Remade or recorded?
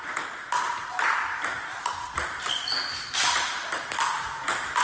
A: recorded